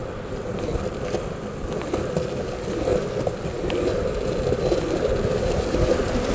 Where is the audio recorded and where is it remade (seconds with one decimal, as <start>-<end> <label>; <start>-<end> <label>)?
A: 0.0-6.3 recorded